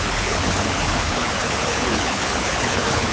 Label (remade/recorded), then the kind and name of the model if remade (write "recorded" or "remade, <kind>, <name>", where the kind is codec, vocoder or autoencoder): remade, codec, HILCodec